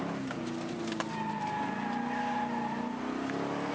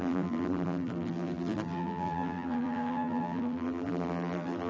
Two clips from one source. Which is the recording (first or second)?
first